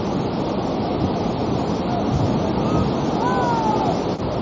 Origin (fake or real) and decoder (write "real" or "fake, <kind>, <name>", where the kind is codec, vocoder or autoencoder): real